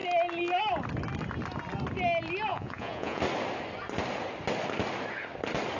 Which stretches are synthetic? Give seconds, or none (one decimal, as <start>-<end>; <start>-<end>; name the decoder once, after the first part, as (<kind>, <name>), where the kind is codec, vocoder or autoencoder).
2.5-3.2 (vocoder, Vocos)